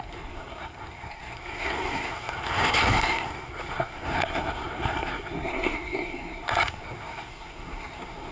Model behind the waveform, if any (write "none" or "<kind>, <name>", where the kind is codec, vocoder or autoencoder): codec, SNAC